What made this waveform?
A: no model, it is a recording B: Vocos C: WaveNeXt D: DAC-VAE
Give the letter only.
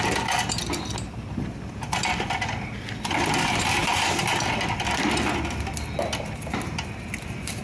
A